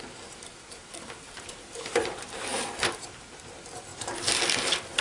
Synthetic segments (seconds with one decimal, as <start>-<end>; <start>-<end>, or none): 0.7-3.0